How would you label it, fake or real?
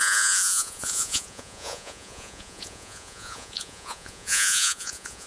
fake